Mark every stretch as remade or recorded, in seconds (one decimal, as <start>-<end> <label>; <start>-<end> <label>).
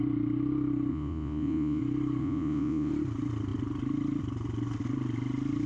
0.0-0.9 recorded; 0.9-1.8 remade; 1.8-2.2 recorded; 2.2-2.9 remade; 2.9-5.7 recorded